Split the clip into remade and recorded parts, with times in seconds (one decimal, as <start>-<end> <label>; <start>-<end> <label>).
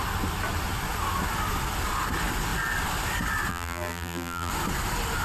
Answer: 0.0-3.5 recorded; 3.5-4.5 remade; 4.5-5.2 recorded